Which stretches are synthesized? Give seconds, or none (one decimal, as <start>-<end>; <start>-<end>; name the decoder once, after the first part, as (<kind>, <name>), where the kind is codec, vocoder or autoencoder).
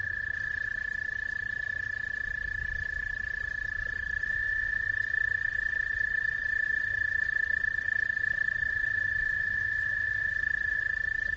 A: none